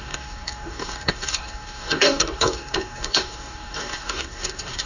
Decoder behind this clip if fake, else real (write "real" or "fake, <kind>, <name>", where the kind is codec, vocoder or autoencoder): fake, codec, DAC